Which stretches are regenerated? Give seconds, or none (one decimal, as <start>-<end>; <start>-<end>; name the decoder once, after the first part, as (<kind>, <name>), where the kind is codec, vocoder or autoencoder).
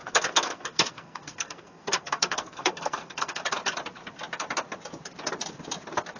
0.0-3.4 (codec, SNAC)